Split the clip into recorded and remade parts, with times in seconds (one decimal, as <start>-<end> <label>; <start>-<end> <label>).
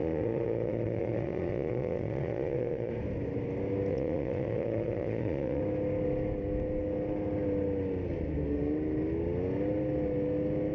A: 0.0-2.9 remade; 2.9-3.9 recorded; 3.9-5.6 remade; 5.6-10.7 recorded